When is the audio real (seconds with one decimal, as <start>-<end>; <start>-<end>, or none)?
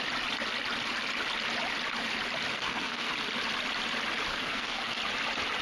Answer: 0.0-2.5; 3.1-4.3; 5.0-5.6